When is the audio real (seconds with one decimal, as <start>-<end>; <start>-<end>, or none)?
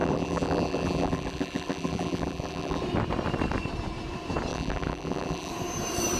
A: 2.8-4.5; 5.5-6.2